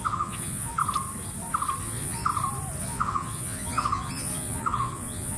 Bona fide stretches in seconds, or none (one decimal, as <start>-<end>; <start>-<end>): 0.8-1.8; 2.3-2.8